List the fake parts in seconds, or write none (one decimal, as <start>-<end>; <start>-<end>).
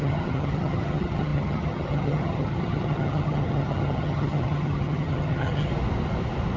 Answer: 0.0-5.7